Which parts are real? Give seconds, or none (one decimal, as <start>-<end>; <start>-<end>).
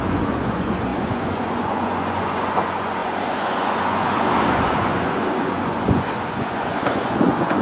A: none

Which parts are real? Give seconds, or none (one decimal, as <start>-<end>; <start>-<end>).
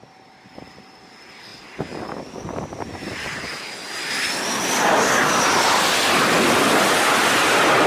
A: 0.0-7.9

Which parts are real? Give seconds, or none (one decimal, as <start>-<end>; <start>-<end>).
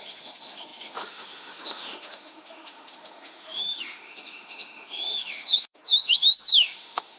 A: none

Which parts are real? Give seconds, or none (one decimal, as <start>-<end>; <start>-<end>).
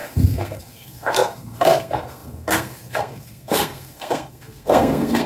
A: none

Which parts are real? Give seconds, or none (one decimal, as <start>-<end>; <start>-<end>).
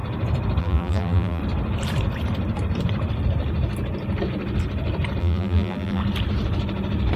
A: 0.0-0.6; 1.4-5.2; 6.0-7.2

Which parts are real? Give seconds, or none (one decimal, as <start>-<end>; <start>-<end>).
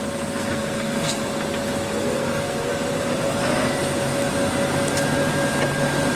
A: 1.2-2.0; 2.7-6.2